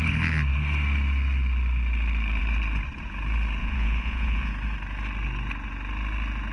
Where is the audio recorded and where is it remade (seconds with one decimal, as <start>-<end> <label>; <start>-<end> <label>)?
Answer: 0.0-3.6 recorded; 3.6-4.5 remade; 4.5-6.5 recorded